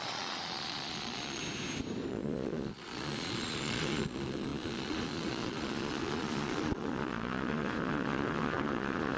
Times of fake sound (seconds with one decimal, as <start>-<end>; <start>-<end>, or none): 0.0-1.4; 2.1-9.2